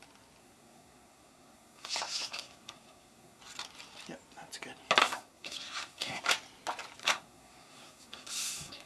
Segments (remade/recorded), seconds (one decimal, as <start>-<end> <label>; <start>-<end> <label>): 0.0-0.4 recorded; 0.4-3.4 remade; 3.4-5.0 recorded; 5.0-6.2 remade; 6.2-7.0 recorded; 7.0-8.9 remade